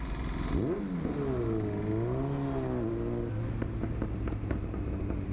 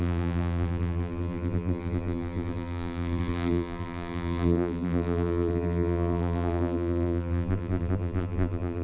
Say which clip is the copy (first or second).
second